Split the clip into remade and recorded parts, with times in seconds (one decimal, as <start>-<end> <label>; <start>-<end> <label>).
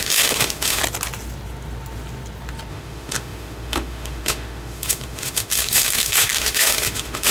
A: 0.0-0.8 remade; 0.8-2.7 recorded; 2.7-7.3 remade